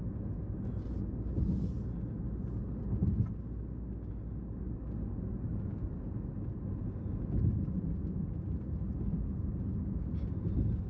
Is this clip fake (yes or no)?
no